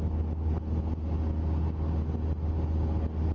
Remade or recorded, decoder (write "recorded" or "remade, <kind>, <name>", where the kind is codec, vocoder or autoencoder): recorded